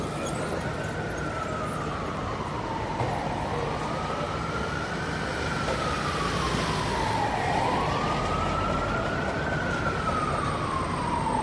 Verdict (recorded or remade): recorded